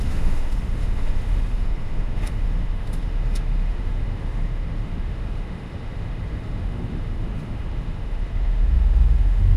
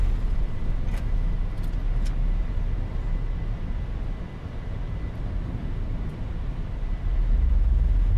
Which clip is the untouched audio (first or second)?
second